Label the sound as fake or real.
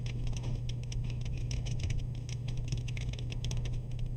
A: fake